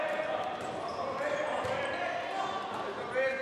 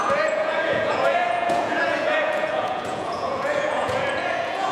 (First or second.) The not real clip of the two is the second